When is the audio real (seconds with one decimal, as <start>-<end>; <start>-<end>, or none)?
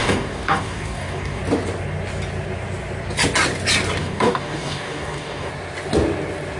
1.4-4.0; 5.5-6.6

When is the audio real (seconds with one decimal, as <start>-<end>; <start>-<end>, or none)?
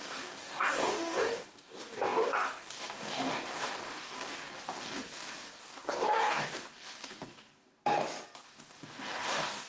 7.8-8.4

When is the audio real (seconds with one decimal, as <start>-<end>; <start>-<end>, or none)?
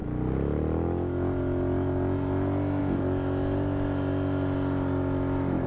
0.0-5.7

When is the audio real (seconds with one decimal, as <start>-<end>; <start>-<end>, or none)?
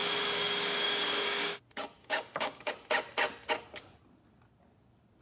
1.6-2.0; 2.7-5.2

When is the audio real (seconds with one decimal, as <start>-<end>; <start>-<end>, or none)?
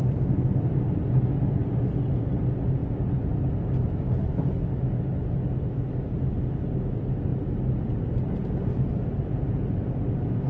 0.0-10.5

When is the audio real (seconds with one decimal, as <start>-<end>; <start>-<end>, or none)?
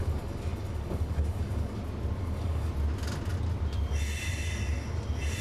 1.8-2.2; 2.7-5.4